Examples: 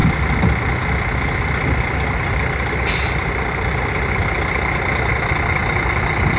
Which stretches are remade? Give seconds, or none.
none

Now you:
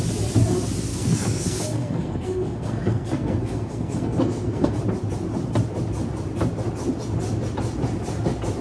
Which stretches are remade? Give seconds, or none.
0.9-4.8 (codec, SNAC)

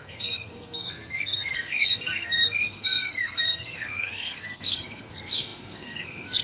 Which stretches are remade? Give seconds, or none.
0.0-6.4 (codec, SNAC)

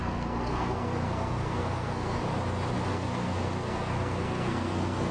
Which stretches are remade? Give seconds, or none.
0.0-2.2 (codec, SNAC); 2.9-5.1

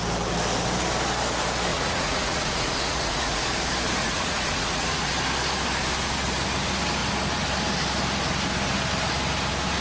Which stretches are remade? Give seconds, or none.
1.7-3.4 (vocoder, Vocos); 4.0-5.1